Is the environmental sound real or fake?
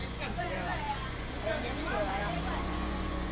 fake